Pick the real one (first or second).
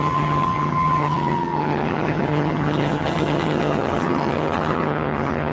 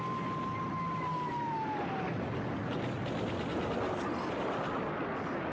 second